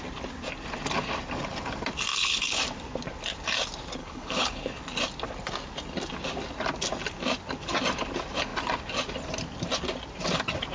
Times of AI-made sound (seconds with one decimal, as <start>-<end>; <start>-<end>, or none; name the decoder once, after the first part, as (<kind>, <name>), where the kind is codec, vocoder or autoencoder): 2.1-2.6 (codec, HILCodec); 4.0-4.8